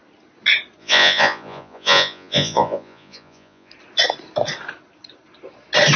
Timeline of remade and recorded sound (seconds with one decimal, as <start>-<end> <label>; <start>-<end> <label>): 0.0-0.8 recorded; 0.8-3.7 remade; 3.7-6.0 recorded